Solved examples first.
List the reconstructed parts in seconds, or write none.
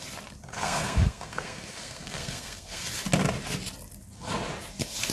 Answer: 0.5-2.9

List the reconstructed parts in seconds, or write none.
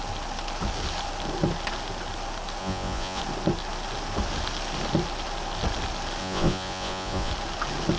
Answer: 2.6-3.2; 6.2-7.3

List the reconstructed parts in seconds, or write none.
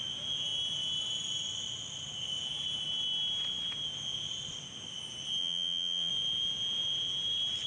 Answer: 5.4-6.1